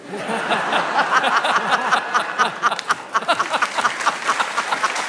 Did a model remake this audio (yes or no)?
no